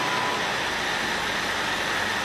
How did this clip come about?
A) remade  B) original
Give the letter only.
A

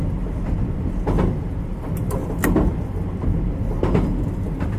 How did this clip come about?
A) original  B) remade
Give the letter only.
A